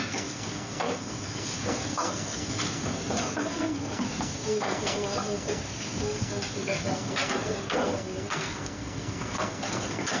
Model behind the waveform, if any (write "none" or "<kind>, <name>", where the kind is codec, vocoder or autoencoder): codec, SNAC